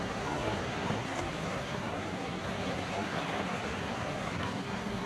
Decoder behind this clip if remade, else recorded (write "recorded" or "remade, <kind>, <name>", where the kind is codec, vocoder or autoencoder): remade, codec, SNAC